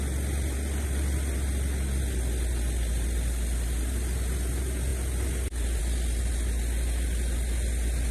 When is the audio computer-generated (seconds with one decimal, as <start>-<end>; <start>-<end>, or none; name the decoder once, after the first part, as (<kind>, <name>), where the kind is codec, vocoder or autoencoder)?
none